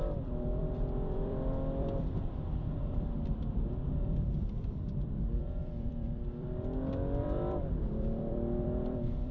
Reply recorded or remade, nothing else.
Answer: remade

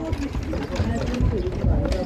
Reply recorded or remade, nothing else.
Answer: recorded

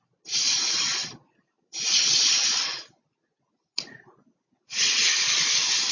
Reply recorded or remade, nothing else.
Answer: recorded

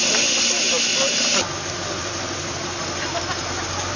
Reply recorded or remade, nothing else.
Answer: recorded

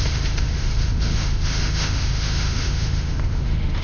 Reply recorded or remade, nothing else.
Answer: remade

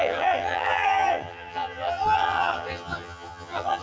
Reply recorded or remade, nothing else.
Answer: remade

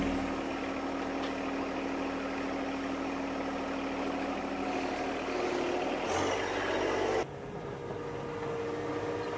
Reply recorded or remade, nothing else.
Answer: recorded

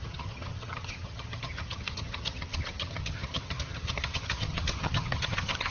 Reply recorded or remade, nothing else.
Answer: remade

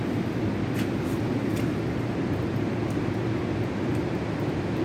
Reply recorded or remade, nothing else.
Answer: recorded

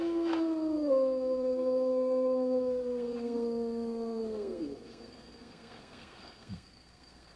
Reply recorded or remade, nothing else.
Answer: remade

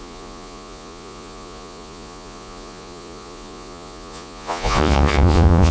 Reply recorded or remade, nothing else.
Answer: remade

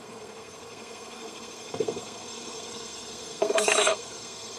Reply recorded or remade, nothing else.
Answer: remade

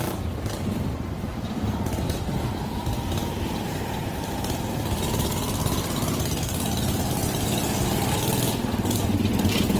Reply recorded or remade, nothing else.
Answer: remade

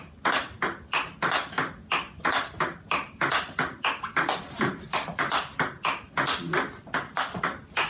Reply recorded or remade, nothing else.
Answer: recorded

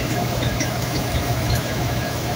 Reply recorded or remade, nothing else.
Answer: remade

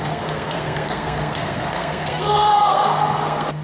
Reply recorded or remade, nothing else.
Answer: remade